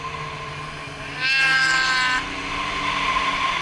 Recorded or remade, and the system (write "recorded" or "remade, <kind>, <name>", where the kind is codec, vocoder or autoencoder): recorded